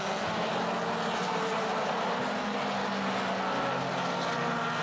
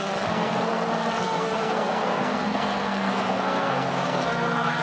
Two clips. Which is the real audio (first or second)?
first